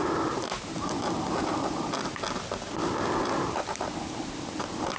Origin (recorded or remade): recorded